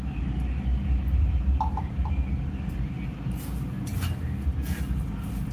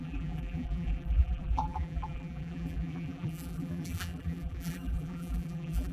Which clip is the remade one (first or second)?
second